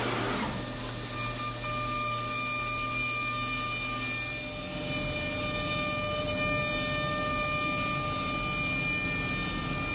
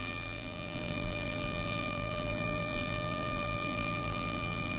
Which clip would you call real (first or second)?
first